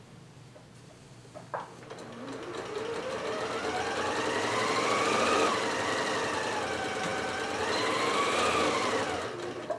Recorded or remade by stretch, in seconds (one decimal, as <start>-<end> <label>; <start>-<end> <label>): 0.0-9.8 recorded